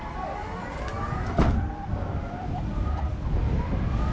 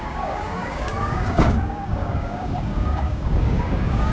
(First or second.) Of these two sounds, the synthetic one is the second